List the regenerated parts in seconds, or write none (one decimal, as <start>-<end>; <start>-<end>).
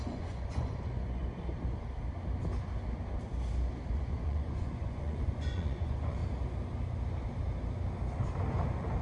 0.0-1.2; 3.9-6.2